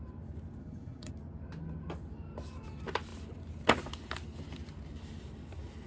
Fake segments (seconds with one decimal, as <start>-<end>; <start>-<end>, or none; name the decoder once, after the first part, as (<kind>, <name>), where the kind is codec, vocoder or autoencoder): 0.6-1.1 (vocoder, HiFi-GAN)